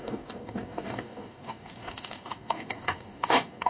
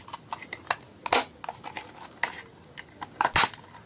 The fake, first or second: first